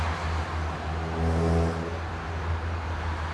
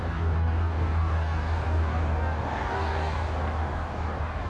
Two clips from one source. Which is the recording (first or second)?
first